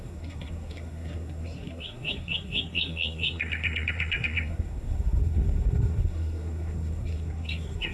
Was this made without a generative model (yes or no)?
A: no